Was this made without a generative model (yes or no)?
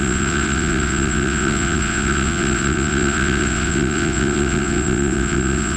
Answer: no